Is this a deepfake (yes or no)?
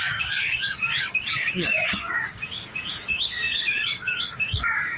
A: yes